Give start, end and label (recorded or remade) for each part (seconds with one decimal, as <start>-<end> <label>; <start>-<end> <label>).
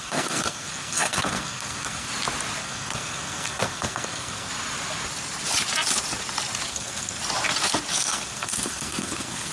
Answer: 0.0-2.1 remade; 2.1-2.6 recorded; 2.6-4.5 remade; 4.5-6.7 recorded; 6.7-7.2 remade; 7.2-7.9 recorded; 7.9-9.5 remade